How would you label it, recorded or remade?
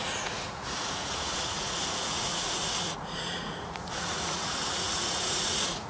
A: remade